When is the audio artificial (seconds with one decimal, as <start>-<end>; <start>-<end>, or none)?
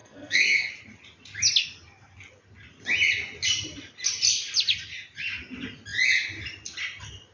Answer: 0.0-0.7